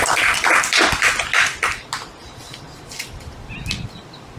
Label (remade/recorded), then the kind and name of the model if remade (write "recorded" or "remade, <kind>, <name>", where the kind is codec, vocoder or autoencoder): recorded